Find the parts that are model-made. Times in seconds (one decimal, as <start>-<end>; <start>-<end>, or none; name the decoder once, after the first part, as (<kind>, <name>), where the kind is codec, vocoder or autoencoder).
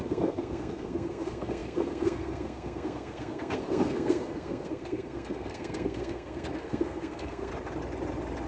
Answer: 0.0-7.5 (codec, SNAC)